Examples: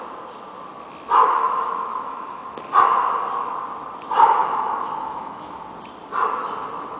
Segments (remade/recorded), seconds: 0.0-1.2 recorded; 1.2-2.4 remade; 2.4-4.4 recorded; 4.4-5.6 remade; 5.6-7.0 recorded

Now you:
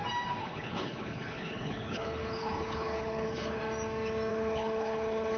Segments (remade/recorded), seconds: 0.0-0.4 recorded; 0.4-3.6 remade; 3.6-4.3 recorded; 4.3-5.4 remade

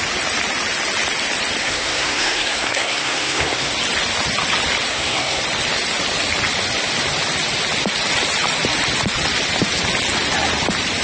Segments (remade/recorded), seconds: 0.0-1.6 recorded; 1.6-3.7 remade; 3.7-4.9 recorded; 4.9-5.4 remade; 5.4-11.0 recorded

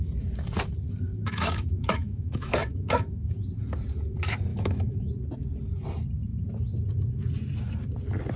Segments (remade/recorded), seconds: 0.0-1.1 recorded; 1.1-3.3 remade; 3.3-4.5 recorded; 4.5-5.1 remade; 5.1-8.4 recorded

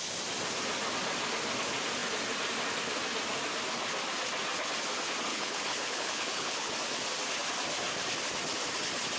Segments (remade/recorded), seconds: 0.0-5.3 recorded; 5.3-6.7 remade; 6.7-9.2 recorded

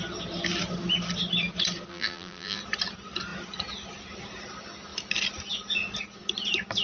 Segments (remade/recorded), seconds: 0.0-1.9 recorded; 1.9-2.6 remade; 2.6-6.8 recorded

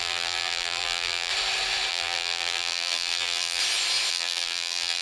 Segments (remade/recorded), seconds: 0.0-1.3 remade; 1.3-1.9 recorded; 1.9-3.6 remade; 3.6-4.1 recorded; 4.1-5.0 remade